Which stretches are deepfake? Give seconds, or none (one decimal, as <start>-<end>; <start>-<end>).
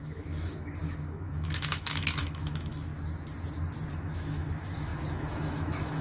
0.0-2.9; 3.9-6.0